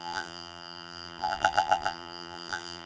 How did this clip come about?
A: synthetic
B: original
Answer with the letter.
A